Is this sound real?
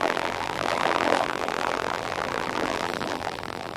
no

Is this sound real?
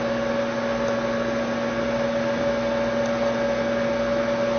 yes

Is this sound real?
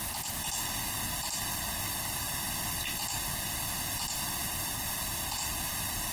yes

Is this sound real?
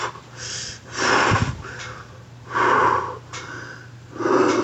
no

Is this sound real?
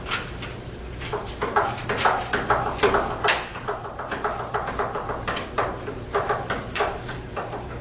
no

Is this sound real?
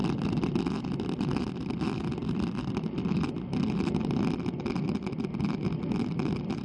yes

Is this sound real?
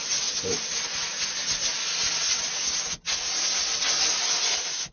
yes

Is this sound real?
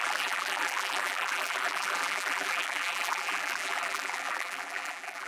no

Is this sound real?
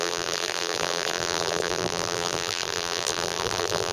no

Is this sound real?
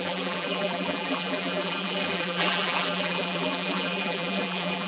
no